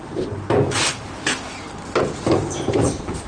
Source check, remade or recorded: remade